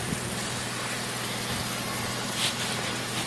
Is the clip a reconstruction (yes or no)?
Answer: no